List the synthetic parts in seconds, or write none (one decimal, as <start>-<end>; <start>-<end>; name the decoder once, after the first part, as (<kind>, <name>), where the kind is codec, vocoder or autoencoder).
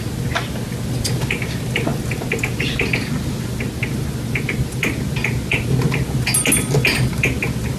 none